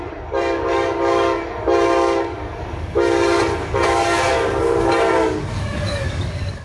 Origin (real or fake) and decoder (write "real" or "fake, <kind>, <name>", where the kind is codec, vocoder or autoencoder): fake, codec, DAC